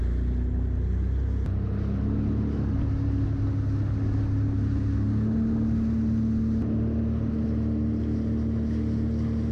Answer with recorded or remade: recorded